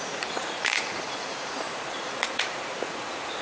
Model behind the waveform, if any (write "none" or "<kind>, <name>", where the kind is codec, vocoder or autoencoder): vocoder, Vocos